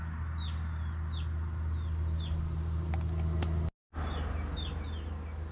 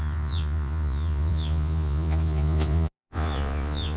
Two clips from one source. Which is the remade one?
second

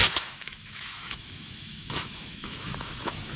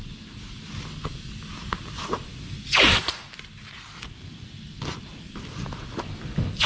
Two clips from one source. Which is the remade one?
first